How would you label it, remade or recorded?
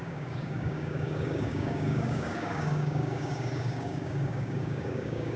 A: remade